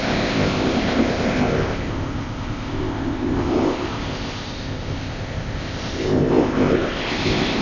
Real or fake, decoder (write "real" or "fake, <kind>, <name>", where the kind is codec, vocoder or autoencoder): fake, codec, ZipCodec